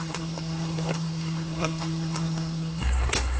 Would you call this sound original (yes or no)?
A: no